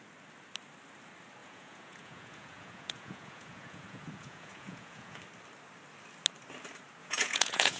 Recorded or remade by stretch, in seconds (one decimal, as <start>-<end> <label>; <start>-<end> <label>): 0.0-1.4 recorded; 1.4-5.2 remade; 5.2-7.0 recorded; 7.0-7.8 remade